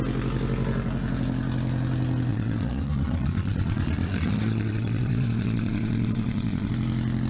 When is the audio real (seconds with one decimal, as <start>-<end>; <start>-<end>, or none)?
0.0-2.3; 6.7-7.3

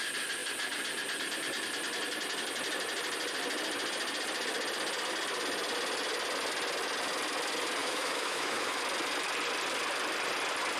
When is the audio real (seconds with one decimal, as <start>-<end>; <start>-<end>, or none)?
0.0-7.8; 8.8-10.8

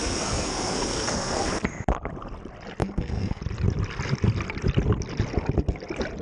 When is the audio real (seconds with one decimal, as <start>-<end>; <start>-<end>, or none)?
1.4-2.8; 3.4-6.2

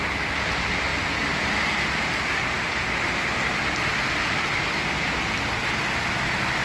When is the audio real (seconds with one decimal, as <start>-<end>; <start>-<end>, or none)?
0.0-0.9; 2.0-6.6

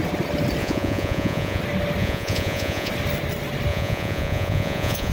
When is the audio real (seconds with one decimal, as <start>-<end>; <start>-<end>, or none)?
0.0-0.6; 1.6-2.0; 2.9-3.7

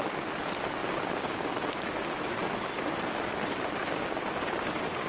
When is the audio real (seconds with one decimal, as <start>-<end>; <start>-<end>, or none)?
0.0-5.1